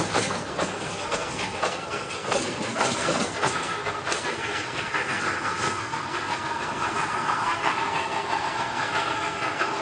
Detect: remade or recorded remade